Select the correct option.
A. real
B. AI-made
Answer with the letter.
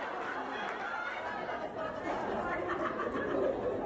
A